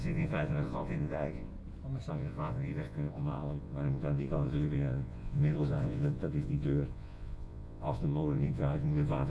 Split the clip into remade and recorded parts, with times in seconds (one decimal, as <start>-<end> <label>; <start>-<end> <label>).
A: 0.0-1.5 remade; 1.5-2.1 recorded; 2.1-9.3 remade